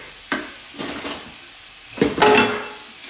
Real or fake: real